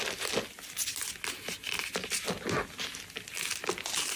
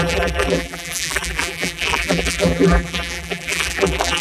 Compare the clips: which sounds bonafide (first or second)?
first